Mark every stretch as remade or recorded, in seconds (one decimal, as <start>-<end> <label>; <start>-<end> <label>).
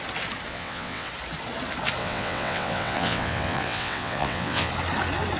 0.0-0.5 recorded; 0.5-1.1 remade; 1.1-2.0 recorded; 2.0-4.7 remade; 4.7-5.4 recorded